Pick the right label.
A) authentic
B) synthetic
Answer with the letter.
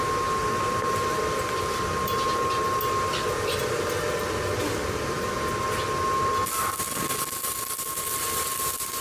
A